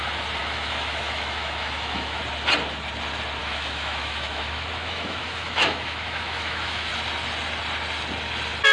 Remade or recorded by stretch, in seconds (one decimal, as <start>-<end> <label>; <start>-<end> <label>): 0.0-0.4 recorded; 0.4-2.2 remade; 2.2-3.4 recorded; 3.4-6.9 remade; 6.9-8.7 recorded